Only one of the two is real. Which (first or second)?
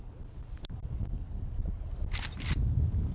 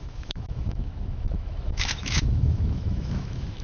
first